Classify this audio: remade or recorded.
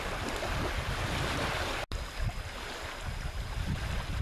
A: recorded